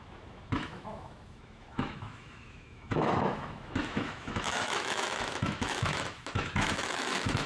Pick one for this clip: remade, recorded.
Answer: remade